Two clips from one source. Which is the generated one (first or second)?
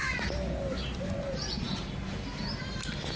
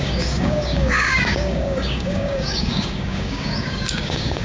second